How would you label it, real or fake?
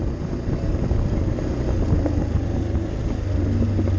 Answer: real